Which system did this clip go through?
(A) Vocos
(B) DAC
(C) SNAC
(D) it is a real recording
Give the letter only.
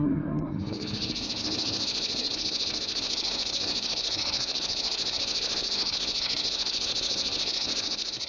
C